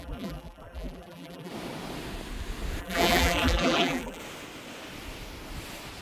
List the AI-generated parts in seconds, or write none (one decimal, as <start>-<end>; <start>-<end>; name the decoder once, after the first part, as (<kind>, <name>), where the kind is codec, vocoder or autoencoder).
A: 0.0-1.5 (vocoder, BigVGAN v2); 2.8-4.2